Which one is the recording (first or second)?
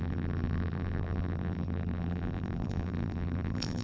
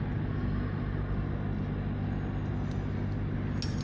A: second